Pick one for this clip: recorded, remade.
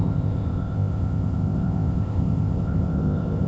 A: remade